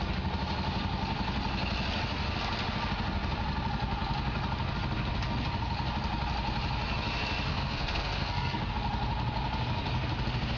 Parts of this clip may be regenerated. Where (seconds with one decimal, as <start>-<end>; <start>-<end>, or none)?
7.5-8.7